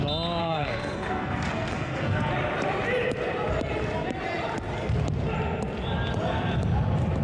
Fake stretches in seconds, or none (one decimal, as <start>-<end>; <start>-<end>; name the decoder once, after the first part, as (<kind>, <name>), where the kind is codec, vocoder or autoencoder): 0.4-2.3 (codec, SNAC)

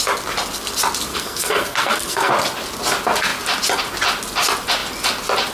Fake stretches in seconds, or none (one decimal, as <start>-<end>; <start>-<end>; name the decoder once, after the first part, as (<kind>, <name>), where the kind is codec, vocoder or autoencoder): 1.1-2.3 (codec, SNAC)

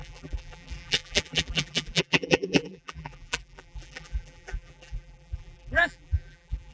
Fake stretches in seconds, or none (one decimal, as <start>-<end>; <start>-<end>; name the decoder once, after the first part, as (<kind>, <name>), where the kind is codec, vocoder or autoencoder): 0.0-6.7 (vocoder, BigVGAN v2)